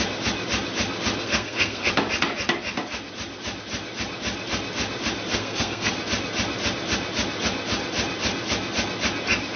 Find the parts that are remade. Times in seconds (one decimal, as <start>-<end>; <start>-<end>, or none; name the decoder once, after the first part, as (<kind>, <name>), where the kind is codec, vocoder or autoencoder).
1.2-1.9 (codec, SNAC); 5.3-5.9

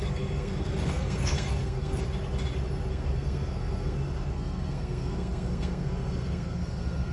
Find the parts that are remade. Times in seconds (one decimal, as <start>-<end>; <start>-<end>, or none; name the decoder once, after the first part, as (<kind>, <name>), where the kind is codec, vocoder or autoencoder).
0.0-2.0 (codec, SNAC); 2.9-7.1

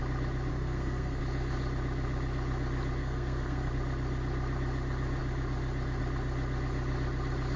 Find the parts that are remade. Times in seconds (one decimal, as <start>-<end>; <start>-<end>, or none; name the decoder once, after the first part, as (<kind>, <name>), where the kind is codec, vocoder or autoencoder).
0.5-1.2 (codec, SNAC); 3.0-3.7

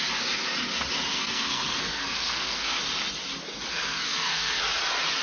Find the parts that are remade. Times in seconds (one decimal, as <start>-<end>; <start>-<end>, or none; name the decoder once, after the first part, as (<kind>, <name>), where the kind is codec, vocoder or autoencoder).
1.1-2.8 (codec, SNAC); 3.7-4.6

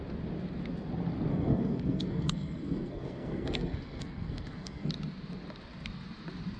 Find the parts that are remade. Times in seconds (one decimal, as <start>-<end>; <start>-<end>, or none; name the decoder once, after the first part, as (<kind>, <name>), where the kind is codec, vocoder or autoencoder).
1.3-4.9 (codec, SNAC)

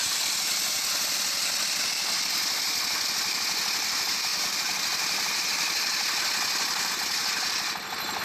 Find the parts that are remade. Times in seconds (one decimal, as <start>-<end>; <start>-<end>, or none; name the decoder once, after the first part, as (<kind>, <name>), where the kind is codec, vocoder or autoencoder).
none

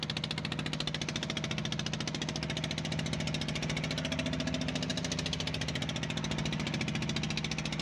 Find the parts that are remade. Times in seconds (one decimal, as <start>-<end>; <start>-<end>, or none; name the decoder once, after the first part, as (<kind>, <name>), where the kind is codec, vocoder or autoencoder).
none